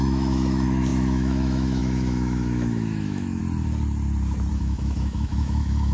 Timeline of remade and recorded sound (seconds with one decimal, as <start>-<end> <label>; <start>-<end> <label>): 0.0-3.4 remade; 3.4-4.5 recorded; 4.5-5.9 remade